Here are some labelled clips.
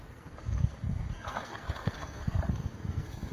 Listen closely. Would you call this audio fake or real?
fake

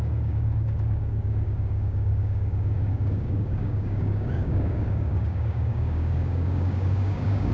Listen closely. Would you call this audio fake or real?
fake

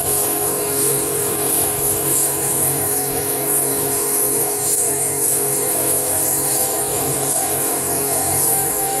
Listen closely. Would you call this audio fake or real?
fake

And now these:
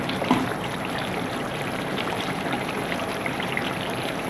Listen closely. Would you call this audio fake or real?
fake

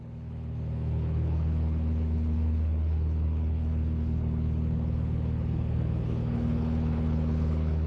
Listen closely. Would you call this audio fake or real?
fake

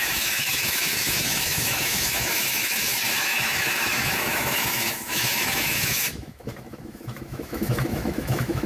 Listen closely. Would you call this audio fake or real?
fake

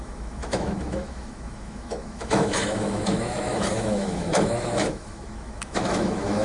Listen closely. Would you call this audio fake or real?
fake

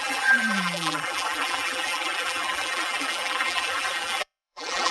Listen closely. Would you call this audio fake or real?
fake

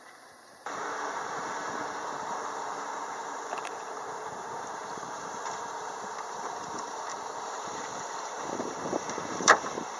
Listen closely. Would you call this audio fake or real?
fake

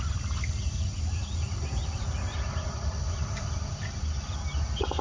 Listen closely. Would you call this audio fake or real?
real